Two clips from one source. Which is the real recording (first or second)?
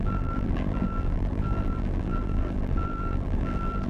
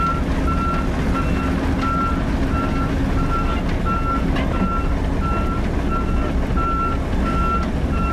second